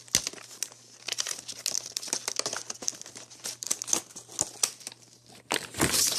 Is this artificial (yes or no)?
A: no